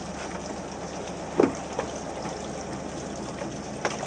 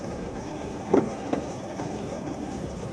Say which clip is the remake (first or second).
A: second